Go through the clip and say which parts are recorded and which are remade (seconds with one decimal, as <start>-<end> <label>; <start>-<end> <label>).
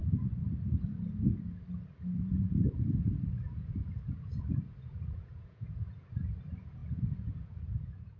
0.0-2.2 recorded; 2.2-8.2 remade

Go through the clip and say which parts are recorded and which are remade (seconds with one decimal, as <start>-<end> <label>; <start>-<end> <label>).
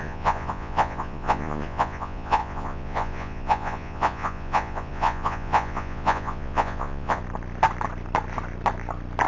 0.0-7.2 remade; 7.2-9.3 recorded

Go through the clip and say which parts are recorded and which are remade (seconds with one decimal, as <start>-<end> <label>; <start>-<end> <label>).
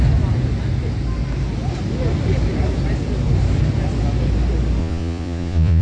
0.0-4.8 recorded; 4.8-5.8 remade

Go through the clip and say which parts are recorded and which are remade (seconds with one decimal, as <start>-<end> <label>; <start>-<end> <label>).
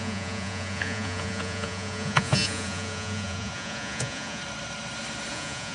0.0-4.4 remade; 4.4-5.3 recorded; 5.3-5.7 remade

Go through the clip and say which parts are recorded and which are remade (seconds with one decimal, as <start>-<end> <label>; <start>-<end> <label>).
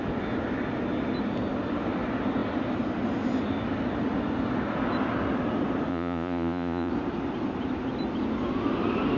0.0-5.9 recorded; 5.9-6.9 remade; 6.9-9.2 recorded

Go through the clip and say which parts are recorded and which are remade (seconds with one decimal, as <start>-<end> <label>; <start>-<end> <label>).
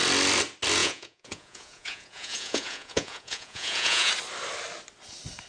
0.0-0.8 recorded; 0.8-4.1 remade; 4.1-5.5 recorded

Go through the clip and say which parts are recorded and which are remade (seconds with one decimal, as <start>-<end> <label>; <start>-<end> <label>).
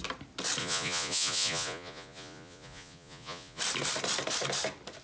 0.0-0.6 recorded; 0.6-3.6 remade; 3.6-5.0 recorded